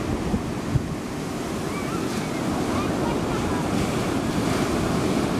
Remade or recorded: recorded